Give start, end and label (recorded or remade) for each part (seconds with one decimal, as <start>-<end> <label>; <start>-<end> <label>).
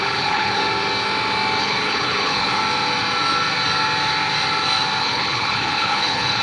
0.0-0.6 remade; 0.6-1.6 recorded; 1.6-2.6 remade; 2.6-5.0 recorded; 5.0-6.4 remade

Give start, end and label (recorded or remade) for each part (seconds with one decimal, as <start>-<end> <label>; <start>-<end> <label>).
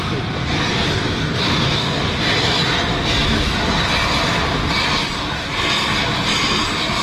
0.0-1.4 recorded; 1.4-2.0 remade; 2.0-7.0 recorded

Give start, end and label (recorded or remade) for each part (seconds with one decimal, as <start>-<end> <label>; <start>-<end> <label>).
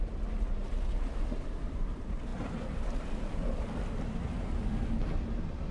0.0-5.7 recorded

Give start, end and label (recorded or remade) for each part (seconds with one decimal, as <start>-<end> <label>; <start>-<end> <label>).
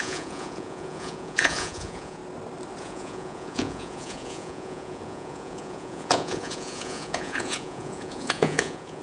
0.0-2.2 remade; 2.2-2.8 recorded; 2.8-9.0 remade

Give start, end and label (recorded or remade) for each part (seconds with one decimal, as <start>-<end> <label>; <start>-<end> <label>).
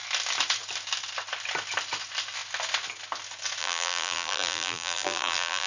0.0-3.6 recorded; 3.6-5.7 remade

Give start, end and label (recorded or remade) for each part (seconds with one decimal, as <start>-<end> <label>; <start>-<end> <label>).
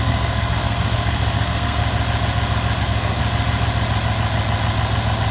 0.0-1.8 remade; 1.8-2.8 recorded; 2.8-3.2 remade; 3.2-5.3 recorded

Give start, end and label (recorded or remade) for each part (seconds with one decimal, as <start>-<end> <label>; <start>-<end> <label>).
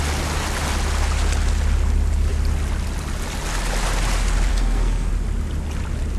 0.0-4.5 recorded; 4.5-5.1 remade; 5.1-6.2 recorded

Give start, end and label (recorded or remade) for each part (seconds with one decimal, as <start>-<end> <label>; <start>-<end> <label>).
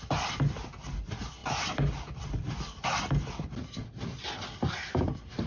0.0-5.5 recorded